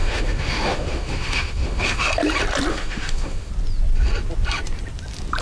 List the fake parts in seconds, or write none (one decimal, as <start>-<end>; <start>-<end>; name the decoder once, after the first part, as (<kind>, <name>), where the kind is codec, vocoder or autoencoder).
0.0-2.1 (autoencoder, DAC-VAE); 2.7-3.5